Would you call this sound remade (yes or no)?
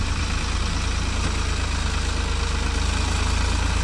no